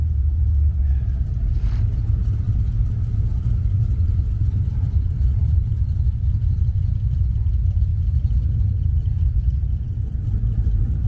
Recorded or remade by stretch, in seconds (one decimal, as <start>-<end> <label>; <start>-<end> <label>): 0.0-2.5 remade; 2.5-3.1 recorded; 3.1-5.7 remade; 5.7-6.5 recorded; 6.5-7.9 remade; 7.9-8.5 recorded; 8.5-11.1 remade